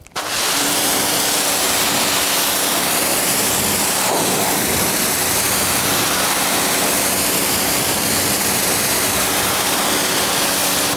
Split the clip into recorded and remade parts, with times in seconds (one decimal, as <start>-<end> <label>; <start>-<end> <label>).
0.0-3.1 recorded; 3.1-3.6 remade; 3.6-5.2 recorded; 5.2-8.8 remade; 8.8-11.0 recorded